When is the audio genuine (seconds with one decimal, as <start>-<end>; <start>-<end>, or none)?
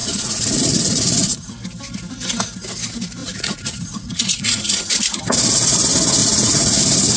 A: 1.5-3.2; 4.9-6.2; 6.8-7.2